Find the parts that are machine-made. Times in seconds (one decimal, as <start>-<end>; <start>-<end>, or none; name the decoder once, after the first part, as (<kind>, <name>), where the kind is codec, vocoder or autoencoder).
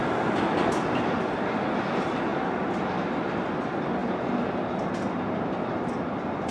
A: none